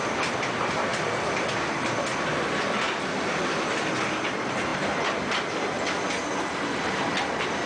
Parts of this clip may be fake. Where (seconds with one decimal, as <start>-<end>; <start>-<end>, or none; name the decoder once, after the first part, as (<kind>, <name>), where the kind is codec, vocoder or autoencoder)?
none